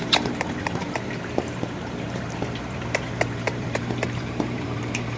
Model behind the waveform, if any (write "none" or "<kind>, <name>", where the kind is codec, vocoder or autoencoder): vocoder, BigVGAN v2